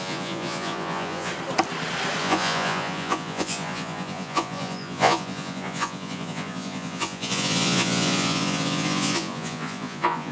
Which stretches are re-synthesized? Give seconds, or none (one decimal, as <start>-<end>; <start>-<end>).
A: 0.0-1.3; 2.2-10.3